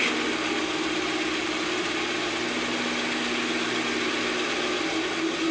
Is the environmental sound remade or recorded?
recorded